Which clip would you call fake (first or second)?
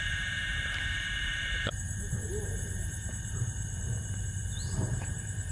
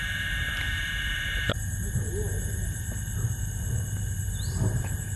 first